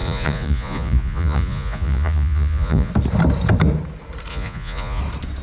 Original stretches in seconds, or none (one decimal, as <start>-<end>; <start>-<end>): 2.9-4.3; 5.0-5.4